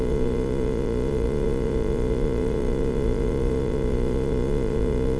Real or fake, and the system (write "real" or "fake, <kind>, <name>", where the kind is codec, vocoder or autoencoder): fake, vocoder, Vocos